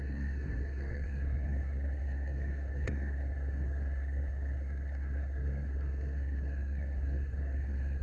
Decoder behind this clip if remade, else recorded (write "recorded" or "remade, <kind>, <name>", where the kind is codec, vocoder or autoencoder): remade, codec, SNAC